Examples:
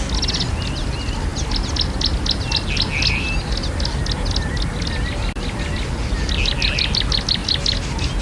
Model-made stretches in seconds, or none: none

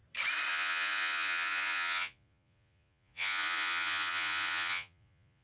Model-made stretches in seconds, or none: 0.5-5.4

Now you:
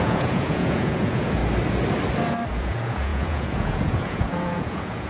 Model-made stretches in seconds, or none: 0.0-1.4; 2.5-5.1

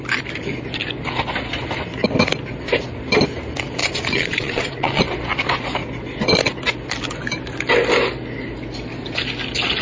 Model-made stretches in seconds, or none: 3.8-5.0